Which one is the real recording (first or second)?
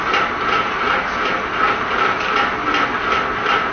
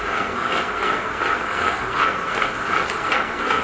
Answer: first